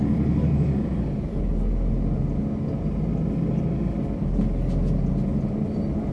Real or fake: real